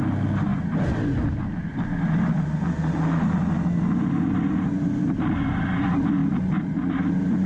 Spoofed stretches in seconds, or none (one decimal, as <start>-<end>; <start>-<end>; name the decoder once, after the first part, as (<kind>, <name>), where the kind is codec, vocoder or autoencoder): none